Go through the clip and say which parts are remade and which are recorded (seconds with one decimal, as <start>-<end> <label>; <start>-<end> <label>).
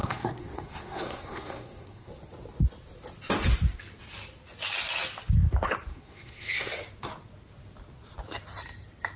0.0-2.1 remade; 2.1-5.9 recorded; 5.9-6.7 remade; 6.7-9.2 recorded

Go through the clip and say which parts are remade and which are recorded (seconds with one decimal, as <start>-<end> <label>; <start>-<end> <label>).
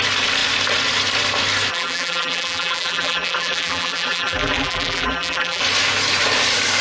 0.0-1.7 recorded; 1.7-5.6 remade; 5.6-6.8 recorded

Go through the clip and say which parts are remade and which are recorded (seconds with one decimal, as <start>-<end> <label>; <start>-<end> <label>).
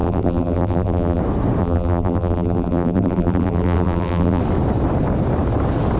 0.0-1.2 remade; 1.2-1.6 recorded; 1.6-4.4 remade; 4.4-6.0 recorded